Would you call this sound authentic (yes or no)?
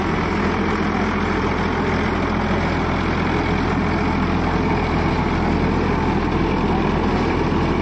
yes